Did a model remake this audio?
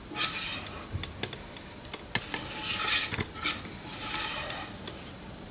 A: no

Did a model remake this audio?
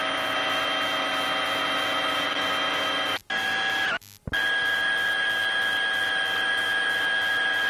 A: no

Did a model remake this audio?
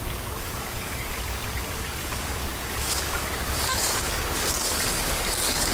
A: yes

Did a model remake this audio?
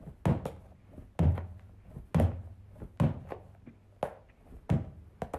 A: no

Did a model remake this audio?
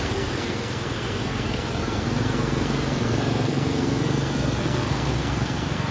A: yes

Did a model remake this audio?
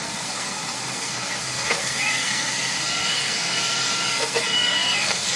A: yes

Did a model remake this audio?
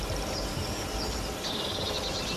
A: yes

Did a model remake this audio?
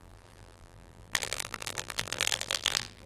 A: yes